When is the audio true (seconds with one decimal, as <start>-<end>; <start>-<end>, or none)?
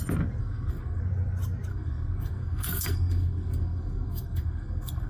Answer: 0.0-0.4; 1.0-1.7